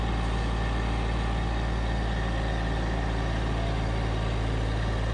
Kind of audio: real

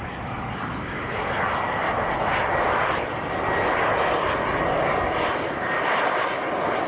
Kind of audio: real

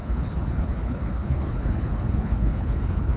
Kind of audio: fake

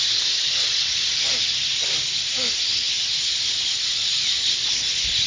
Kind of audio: real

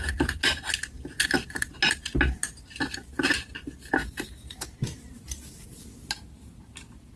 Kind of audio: real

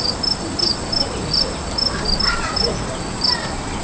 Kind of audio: real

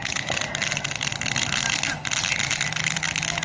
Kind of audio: real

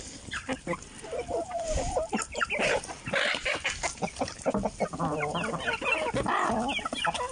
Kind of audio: real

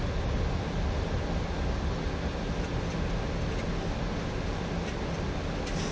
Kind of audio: real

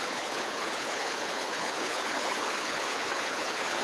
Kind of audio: fake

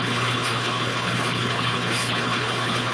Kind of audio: fake